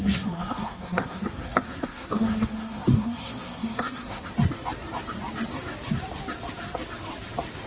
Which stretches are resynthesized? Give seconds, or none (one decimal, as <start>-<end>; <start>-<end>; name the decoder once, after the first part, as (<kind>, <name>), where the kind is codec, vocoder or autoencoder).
0.0-4.3 (codec, SNAC)